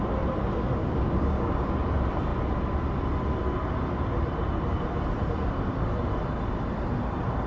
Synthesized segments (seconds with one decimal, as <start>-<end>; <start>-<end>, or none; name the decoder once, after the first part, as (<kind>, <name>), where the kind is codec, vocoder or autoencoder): 0.8-1.7 (codec, DAC)